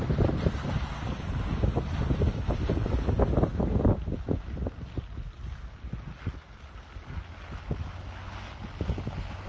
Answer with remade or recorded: recorded